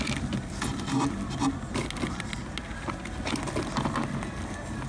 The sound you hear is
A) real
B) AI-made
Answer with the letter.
A